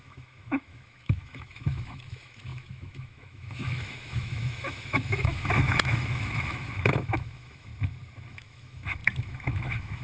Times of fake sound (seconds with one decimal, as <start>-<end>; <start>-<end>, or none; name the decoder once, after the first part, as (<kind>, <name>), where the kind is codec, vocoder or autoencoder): 0.0-7.7 (autoencoder, DAC-VAE); 8.3-10.0